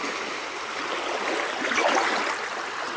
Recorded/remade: recorded